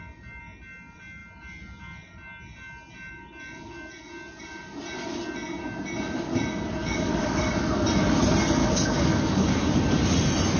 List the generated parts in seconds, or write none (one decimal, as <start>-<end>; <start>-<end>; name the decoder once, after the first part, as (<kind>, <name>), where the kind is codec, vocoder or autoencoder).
6.8-7.4 (codec, DAC); 8.6-9.7